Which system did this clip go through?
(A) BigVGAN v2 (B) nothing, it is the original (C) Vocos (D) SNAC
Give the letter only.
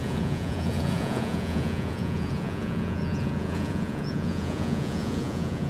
C